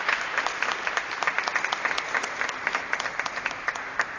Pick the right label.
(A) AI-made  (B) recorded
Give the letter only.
B